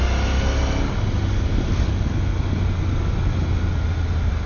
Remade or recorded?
recorded